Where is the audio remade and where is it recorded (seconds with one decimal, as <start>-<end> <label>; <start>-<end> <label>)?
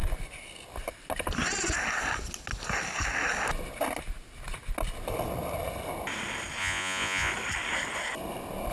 0.0-6.6 recorded; 6.6-7.3 remade; 7.3-8.7 recorded